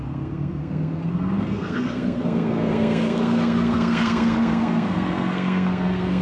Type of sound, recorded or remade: remade